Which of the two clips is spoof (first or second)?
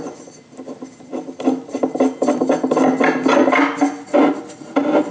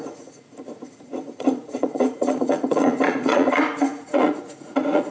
second